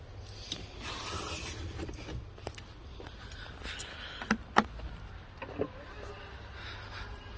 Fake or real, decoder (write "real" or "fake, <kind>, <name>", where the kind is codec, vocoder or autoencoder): real